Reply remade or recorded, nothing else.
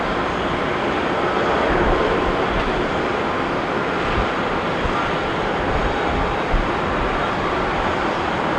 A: recorded